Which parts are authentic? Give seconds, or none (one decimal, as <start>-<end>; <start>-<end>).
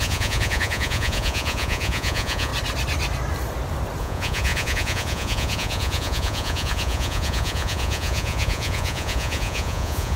2.5-4.0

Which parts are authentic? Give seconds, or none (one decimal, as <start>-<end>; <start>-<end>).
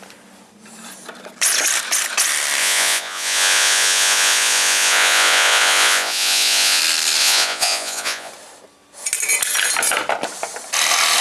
0.0-2.6; 6.8-7.2; 8.3-11.2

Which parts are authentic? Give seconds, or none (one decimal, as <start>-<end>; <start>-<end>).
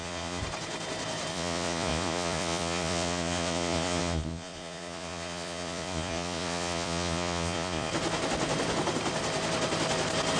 0.4-1.3; 7.9-10.4